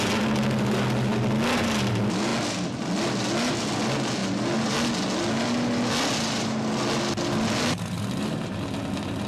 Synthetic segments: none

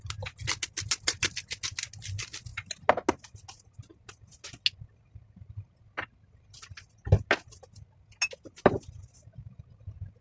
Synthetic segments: none

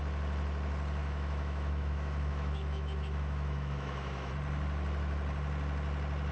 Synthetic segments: 1.0-4.3

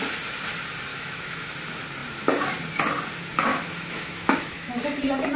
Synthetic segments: 0.9-1.5; 3.5-4.7

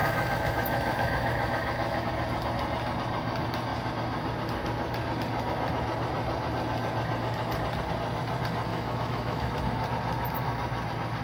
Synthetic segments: 0.0-2.1; 8.7-9.6

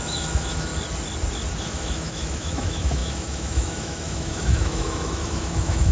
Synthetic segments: 0.0-0.7; 1.6-5.9

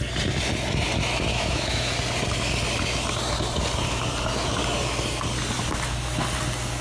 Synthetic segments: 1.3-1.9